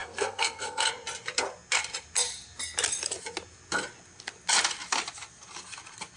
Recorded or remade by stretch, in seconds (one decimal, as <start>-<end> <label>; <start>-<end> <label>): 0.0-0.9 remade; 0.9-6.2 recorded